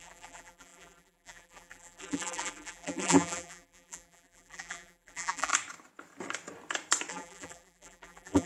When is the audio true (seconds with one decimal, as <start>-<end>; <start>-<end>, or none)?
5.5-7.1